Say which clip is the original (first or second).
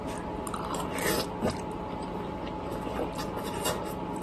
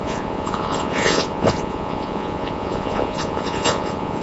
first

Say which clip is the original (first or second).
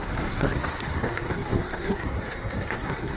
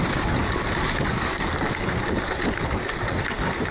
second